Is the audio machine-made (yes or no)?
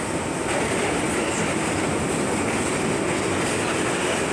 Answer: no